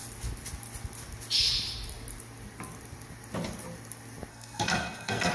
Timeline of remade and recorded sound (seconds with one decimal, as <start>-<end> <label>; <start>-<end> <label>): 0.0-4.3 recorded; 4.3-5.3 remade